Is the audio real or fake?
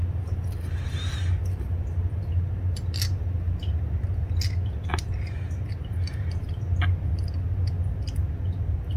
real